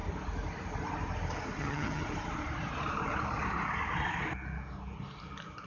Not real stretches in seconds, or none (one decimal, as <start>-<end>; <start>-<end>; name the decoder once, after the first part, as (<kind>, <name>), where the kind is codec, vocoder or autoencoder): 1.6-2.0 (vocoder, HiFi-GAN)